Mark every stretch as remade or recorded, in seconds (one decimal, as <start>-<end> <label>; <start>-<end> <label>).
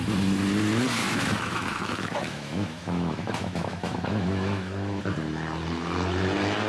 0.0-1.0 recorded; 1.0-5.0 remade; 5.0-6.7 recorded